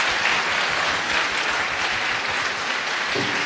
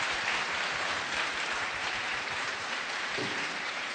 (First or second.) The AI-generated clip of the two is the second